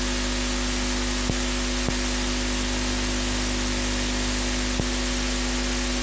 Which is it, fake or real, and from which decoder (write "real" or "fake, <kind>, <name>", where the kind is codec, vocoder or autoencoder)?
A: real